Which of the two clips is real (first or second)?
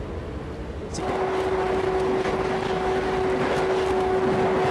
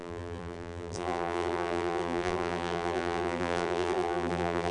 first